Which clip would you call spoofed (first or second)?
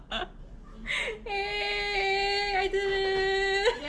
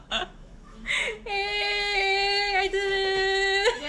second